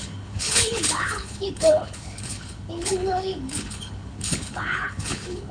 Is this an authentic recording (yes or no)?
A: no